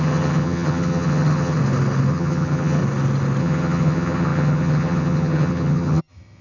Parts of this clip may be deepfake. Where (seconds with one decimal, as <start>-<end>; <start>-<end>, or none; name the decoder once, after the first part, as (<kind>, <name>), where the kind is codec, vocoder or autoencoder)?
0.0-1.6 (vocoder, HiFi-GAN); 2.1-2.8; 3.4-6.4